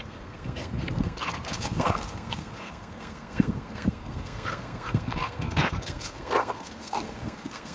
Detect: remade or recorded remade